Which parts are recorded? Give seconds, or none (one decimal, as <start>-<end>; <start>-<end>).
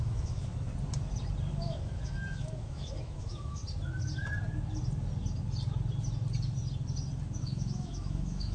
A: 0.7-1.5; 3.6-7.4